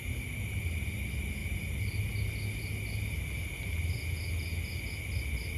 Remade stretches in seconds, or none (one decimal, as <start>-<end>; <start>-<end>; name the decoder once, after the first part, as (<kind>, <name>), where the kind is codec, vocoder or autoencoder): none